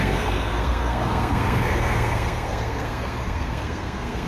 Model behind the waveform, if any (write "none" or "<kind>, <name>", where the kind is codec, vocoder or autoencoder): codec, SNAC